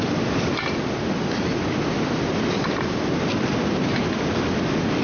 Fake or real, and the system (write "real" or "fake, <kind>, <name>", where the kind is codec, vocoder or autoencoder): real